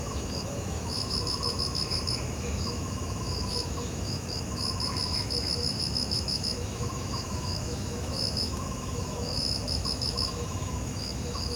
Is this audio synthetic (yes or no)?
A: yes